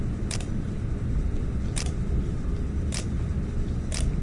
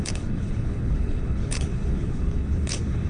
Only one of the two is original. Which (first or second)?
first